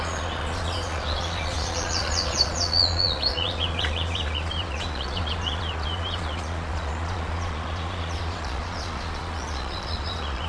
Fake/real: fake